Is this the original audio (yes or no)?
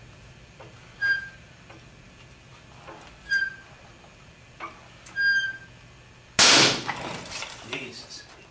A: yes